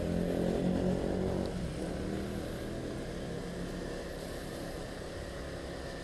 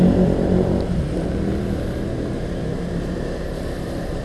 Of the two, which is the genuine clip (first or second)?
first